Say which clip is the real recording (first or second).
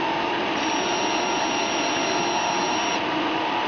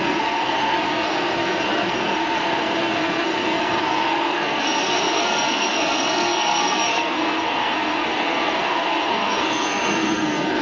first